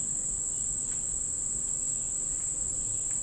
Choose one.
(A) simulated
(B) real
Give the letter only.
B